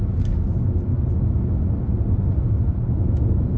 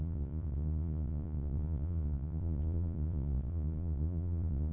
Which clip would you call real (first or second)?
first